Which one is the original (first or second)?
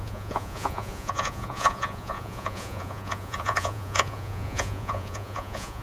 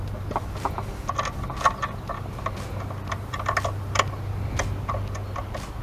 second